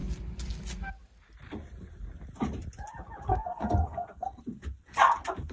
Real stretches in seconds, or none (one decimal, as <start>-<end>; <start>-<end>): 0.0-3.3; 4.4-5.5